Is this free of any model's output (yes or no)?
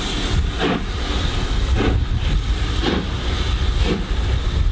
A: yes